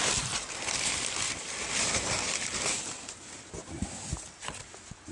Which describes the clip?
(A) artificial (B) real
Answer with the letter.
B